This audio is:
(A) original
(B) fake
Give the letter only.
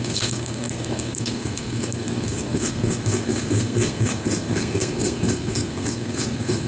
B